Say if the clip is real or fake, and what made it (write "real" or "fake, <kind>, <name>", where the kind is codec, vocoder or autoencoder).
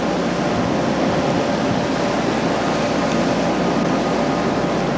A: real